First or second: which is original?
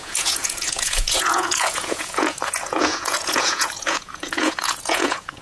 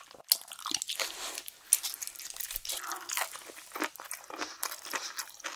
second